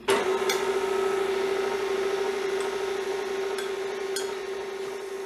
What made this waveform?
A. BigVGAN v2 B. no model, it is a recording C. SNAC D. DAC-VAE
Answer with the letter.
B